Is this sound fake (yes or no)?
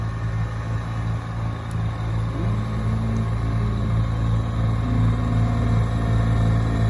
no